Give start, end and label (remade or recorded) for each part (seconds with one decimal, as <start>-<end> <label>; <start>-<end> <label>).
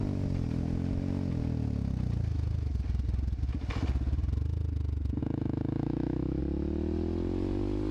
0.0-5.2 recorded; 5.2-6.4 remade; 6.4-7.9 recorded